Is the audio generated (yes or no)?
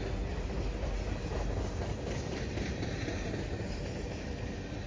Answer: no